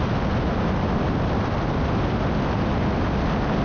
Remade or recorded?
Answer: recorded